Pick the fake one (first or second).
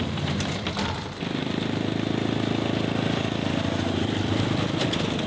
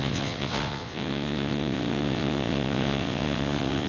second